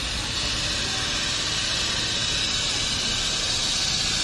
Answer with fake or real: real